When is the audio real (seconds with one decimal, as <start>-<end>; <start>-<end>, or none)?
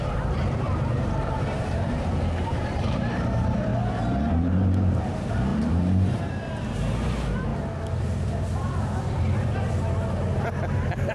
3.7-4.3; 7.5-10.4